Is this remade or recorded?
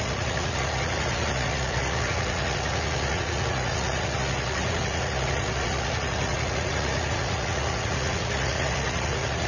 remade